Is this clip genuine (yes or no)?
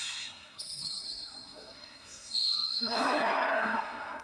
no